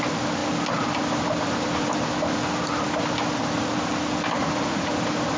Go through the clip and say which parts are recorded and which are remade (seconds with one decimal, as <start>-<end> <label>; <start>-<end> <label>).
0.0-4.4 recorded; 4.4-4.9 remade; 4.9-5.4 recorded